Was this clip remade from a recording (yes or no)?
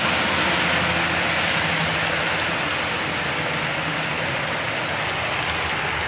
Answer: no